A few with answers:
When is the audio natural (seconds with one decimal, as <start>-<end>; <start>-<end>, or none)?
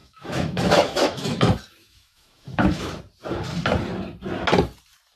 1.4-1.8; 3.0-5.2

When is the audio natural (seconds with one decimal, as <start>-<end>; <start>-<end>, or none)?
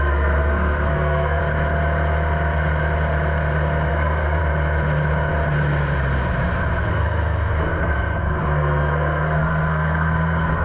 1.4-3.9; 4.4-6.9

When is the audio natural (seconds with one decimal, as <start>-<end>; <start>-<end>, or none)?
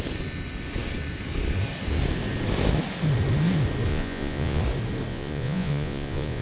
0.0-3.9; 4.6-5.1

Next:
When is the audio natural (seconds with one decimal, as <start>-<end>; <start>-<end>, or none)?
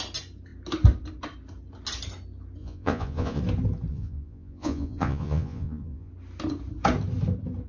0.0-2.6; 3.4-3.9; 6.1-7.7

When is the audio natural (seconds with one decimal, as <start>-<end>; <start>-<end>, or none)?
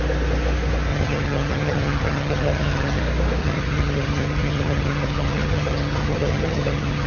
0.0-0.9; 3.0-3.4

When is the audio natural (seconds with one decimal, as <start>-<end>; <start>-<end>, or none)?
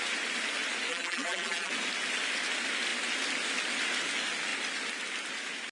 0.0-0.9; 1.7-5.7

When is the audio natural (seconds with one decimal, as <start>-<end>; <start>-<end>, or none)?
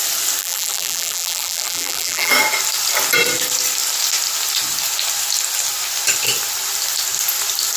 0.0-0.4; 2.3-7.8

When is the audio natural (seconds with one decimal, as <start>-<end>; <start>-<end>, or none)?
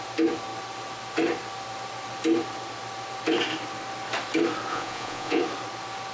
0.0-4.7; 5.4-6.1